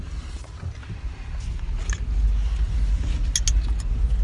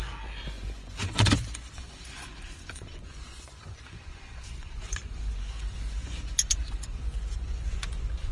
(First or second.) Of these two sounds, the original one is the first